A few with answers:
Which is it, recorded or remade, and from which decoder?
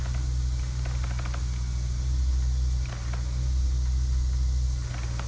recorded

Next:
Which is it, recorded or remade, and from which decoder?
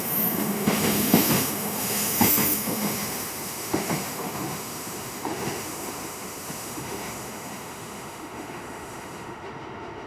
remade, autoencoder, DAC-VAE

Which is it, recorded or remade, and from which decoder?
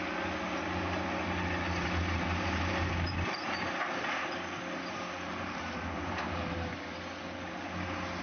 recorded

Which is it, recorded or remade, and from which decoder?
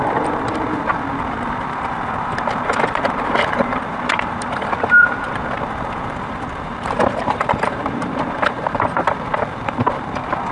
remade, vocoder, BigVGAN v2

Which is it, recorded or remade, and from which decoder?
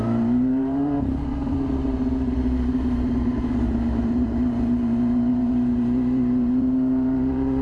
remade, vocoder, BigVGAN v2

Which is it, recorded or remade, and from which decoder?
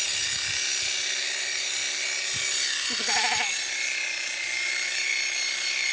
recorded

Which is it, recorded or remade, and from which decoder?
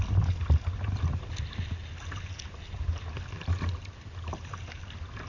recorded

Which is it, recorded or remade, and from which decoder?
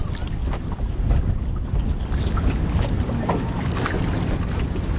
recorded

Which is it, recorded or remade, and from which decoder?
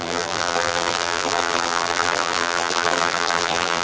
remade, vocoder, BigVGAN v2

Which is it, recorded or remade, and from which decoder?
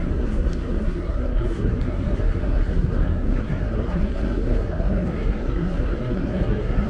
remade, codec, SNAC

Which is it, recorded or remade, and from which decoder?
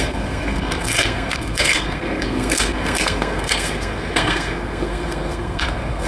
remade, codec, SNAC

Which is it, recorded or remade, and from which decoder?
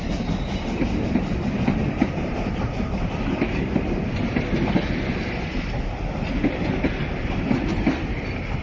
recorded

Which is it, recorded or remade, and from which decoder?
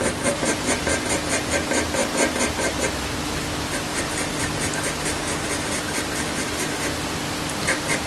recorded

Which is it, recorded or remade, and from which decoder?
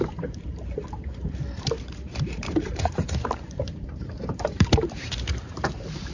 remade, vocoder, BigVGAN v2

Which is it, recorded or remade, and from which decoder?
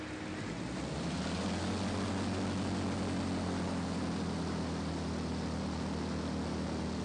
recorded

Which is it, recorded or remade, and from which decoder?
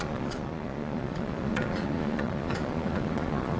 remade, vocoder, Vocos